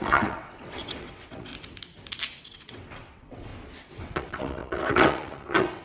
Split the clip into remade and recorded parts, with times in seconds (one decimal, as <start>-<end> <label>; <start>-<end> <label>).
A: 0.0-1.5 remade; 1.5-2.4 recorded; 2.4-3.5 remade; 3.5-4.0 recorded; 4.0-5.8 remade